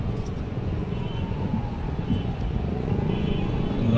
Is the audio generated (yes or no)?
yes